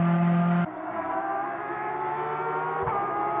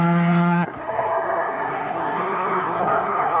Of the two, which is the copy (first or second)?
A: second